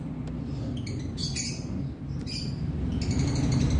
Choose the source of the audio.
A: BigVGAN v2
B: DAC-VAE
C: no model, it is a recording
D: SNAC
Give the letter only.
C